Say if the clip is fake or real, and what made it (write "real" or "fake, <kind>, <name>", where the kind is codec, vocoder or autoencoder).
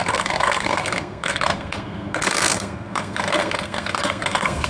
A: fake, codec, SNAC